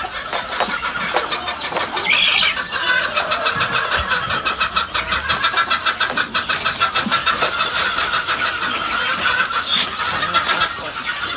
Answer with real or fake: real